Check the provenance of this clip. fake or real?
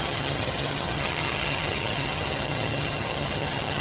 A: fake